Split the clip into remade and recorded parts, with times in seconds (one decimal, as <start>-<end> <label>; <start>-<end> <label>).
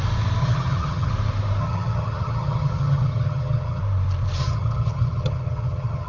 0.0-0.4 recorded; 0.4-1.1 remade; 1.1-1.6 recorded; 1.6-3.8 remade; 3.8-4.4 recorded; 4.4-6.1 remade